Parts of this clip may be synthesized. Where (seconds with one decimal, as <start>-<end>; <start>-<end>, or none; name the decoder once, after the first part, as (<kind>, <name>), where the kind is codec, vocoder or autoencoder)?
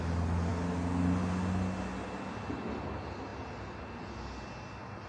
none